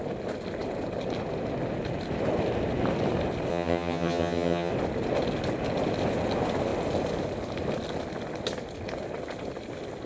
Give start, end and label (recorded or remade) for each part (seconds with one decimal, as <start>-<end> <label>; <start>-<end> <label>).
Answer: 0.0-3.5 recorded; 3.5-4.7 remade; 4.7-10.1 recorded